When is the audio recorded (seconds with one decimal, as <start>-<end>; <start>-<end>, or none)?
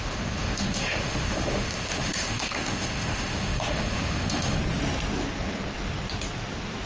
4.6-6.9